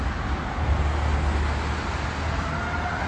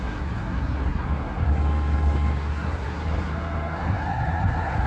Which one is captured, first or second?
first